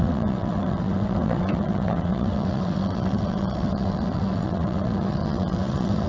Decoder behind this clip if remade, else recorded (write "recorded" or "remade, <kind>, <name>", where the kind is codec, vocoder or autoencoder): remade, vocoder, WaveNeXt